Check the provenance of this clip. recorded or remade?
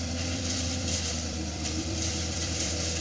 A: remade